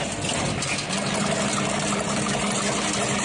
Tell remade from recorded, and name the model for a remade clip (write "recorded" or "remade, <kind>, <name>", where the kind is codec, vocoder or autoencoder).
recorded